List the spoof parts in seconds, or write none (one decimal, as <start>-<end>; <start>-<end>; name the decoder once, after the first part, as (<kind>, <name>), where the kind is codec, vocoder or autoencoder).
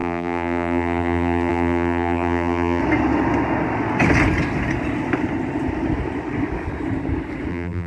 0.0-2.8 (vocoder, BigVGAN v2); 7.5-7.9